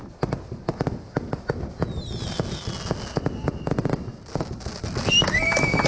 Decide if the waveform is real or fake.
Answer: real